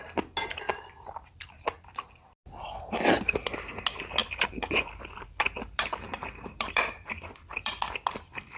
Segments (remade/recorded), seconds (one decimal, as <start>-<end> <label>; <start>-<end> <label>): 0.0-4.2 recorded; 4.2-7.7 remade; 7.7-8.6 recorded